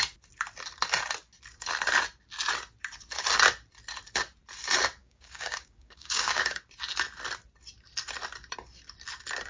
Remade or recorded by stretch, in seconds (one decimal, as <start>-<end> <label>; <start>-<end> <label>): 0.0-5.0 recorded; 5.0-6.6 remade; 6.6-9.5 recorded